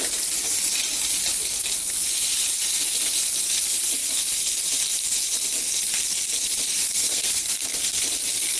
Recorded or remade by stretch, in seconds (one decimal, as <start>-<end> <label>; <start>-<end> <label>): 0.0-6.8 recorded; 6.8-8.0 remade; 8.0-8.6 recorded